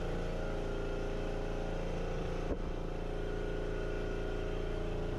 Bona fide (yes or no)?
yes